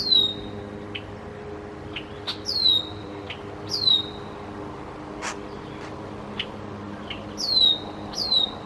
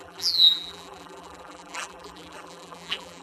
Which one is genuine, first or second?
first